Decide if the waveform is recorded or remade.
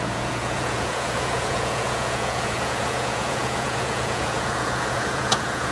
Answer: remade